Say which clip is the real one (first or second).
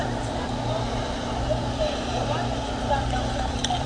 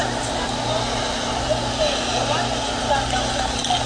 second